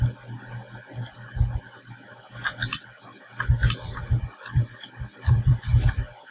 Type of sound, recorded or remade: recorded